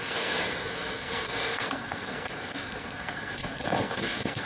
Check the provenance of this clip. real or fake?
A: fake